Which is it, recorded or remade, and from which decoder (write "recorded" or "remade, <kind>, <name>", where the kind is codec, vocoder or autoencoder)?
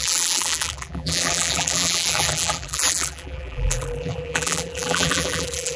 remade, vocoder, BigVGAN v2